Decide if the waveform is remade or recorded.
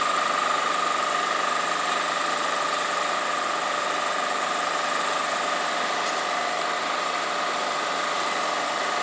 recorded